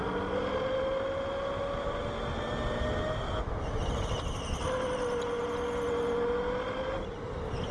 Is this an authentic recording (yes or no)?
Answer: yes